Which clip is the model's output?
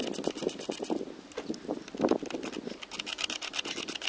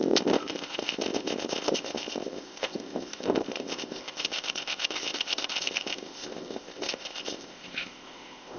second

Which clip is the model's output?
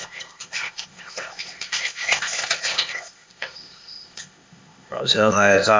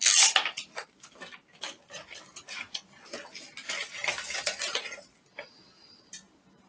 first